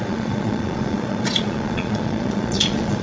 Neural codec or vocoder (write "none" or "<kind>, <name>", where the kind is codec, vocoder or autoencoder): vocoder, Vocos